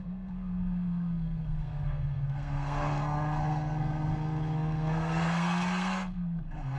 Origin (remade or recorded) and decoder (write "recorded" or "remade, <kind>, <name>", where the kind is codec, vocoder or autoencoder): remade, codec, SNAC